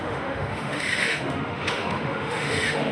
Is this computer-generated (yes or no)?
yes